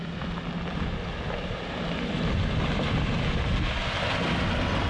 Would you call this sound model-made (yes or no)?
no